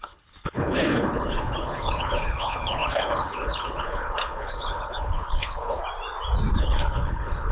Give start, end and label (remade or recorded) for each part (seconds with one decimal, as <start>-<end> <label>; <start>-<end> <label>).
0.0-5.8 remade; 5.8-6.6 recorded; 6.6-7.5 remade